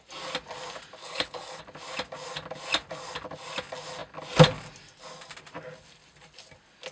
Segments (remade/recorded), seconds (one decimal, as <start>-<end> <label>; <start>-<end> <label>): 0.0-1.0 recorded; 1.0-1.6 remade; 1.6-6.9 recorded